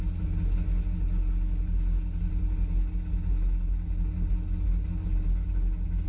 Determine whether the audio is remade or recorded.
recorded